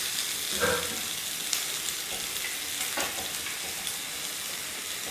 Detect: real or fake real